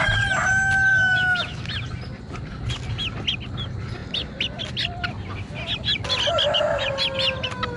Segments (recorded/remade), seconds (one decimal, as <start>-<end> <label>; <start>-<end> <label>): 0.0-0.9 recorded; 0.9-1.6 remade; 1.6-7.8 recorded